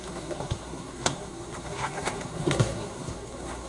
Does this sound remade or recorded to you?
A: remade